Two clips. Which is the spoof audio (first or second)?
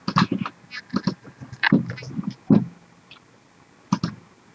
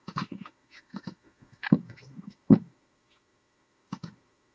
second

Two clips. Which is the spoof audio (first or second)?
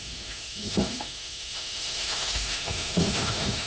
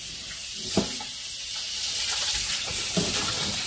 first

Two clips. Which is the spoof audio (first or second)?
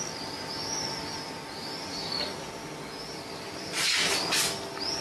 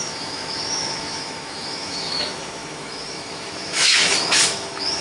second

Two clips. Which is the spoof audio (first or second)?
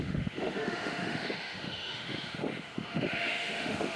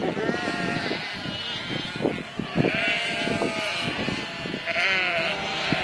first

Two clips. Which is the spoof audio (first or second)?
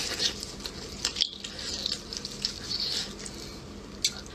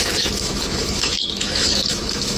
second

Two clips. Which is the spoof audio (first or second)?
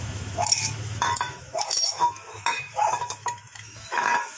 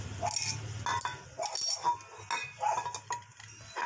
first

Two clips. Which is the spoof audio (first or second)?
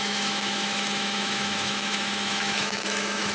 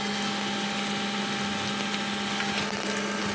first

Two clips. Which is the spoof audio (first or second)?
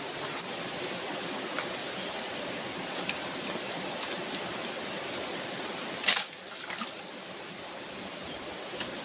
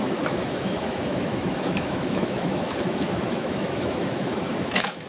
second